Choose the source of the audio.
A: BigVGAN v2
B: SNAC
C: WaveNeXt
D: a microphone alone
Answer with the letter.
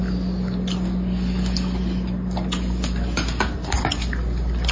D